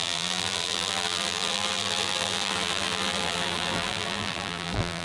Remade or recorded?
remade